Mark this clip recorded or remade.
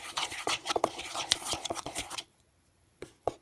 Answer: remade